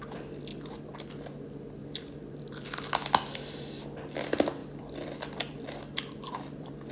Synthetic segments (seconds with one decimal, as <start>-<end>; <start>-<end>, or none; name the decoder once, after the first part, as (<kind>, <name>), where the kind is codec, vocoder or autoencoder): 0.5-1.1 (vocoder, BigVGAN v2); 1.8-2.5; 4.6-6.9